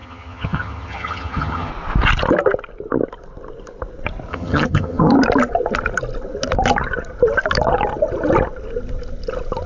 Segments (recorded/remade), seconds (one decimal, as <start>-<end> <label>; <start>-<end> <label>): 0.0-1.7 remade; 1.7-4.3 recorded; 4.3-5.1 remade; 5.1-9.7 recorded

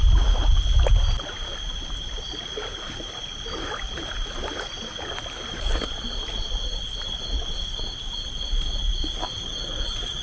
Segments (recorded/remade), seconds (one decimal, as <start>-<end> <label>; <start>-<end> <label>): 0.0-10.2 recorded

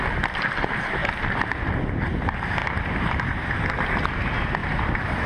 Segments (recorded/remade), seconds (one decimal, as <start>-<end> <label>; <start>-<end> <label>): 0.0-2.6 recorded; 2.6-3.7 remade; 3.7-4.6 recorded; 4.6-5.3 remade